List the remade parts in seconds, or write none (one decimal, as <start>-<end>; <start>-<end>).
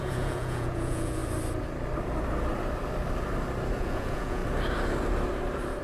0.0-1.2; 3.8-4.4